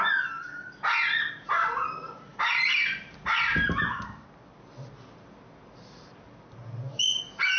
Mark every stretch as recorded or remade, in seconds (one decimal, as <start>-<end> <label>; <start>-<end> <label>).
0.0-7.6 recorded